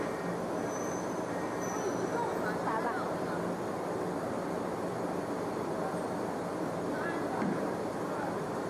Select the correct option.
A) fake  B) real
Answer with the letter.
B